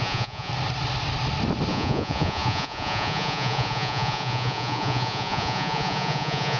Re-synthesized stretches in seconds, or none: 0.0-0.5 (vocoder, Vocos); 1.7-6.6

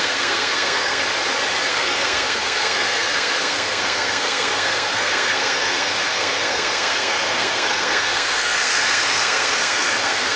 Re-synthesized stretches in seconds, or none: 0.0-1.0 (codec, SNAC); 1.7-10.4

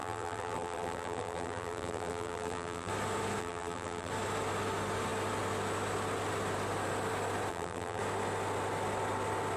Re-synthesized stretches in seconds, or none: 0.0-2.9 (vocoder, BigVGAN v2); 3.4-4.1; 7.5-8.0

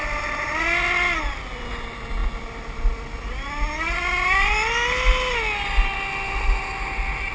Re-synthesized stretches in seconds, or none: none

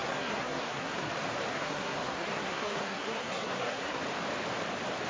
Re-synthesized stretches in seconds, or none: 0.0-1.1 (codec, SNAC); 1.5-4.0

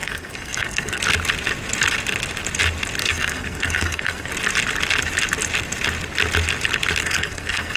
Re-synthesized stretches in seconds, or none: 0.0-1.0 (codec, SNAC); 3.0-4.3; 7.0-7.8

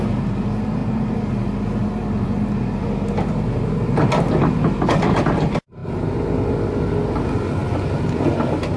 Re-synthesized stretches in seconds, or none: none

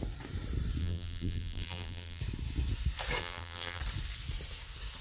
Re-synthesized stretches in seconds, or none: 0.8-2.2 (vocoder, BigVGAN v2); 3.2-3.8